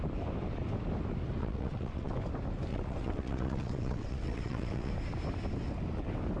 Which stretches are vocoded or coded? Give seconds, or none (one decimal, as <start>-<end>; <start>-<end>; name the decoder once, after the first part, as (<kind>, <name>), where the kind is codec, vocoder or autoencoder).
1.4-2.1 (vocoder, WaveNeXt); 2.7-4.9